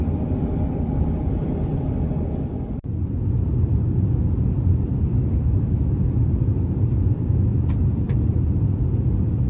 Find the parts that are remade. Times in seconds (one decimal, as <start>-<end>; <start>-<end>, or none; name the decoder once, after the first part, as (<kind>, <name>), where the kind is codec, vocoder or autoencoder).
5.1-5.9 (autoencoder, DAC-VAE)